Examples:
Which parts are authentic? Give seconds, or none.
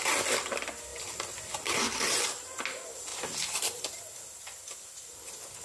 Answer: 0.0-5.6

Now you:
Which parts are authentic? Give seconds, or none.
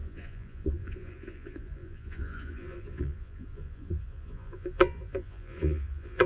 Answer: none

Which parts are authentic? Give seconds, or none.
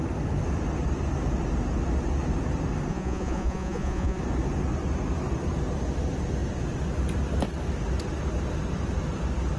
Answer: 0.0-2.9; 4.2-9.6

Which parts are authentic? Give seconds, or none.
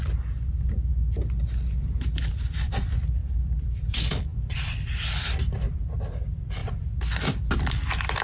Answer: 0.9-2.3; 6.6-7.5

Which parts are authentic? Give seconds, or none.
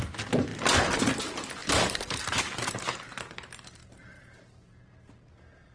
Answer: 0.0-1.6; 4.8-5.7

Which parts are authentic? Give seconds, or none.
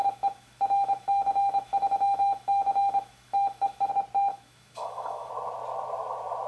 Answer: 3.9-4.3; 5.3-6.5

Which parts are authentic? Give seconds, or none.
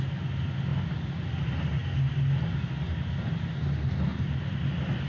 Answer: 0.0-4.1; 4.6-5.1